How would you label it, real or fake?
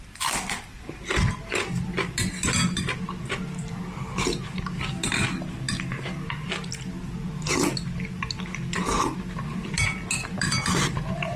fake